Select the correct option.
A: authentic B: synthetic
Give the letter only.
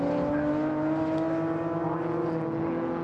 A